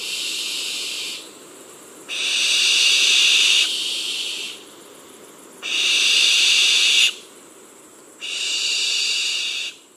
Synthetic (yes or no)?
yes